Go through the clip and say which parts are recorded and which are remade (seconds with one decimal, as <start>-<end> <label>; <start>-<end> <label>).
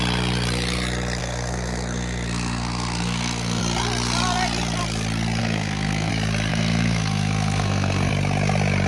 0.0-1.2 recorded; 1.2-3.6 remade; 3.6-5.4 recorded; 5.4-6.1 remade; 6.1-6.5 recorded; 6.5-8.1 remade; 8.1-8.9 recorded